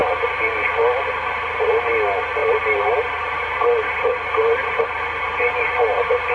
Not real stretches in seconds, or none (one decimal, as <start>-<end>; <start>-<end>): 2.4-6.3